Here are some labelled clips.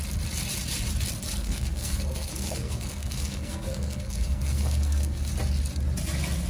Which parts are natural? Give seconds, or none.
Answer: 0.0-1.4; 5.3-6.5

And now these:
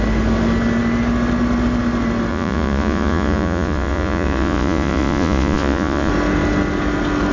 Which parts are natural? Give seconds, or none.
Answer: 0.0-2.3; 6.1-7.3

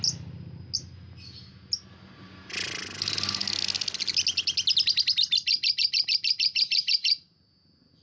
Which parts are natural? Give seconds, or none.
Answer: 0.0-8.0